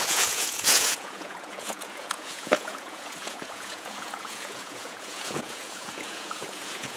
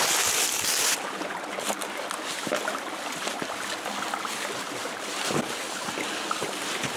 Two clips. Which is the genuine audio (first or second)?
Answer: second